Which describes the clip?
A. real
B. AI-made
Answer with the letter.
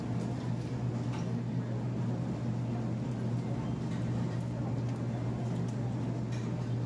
A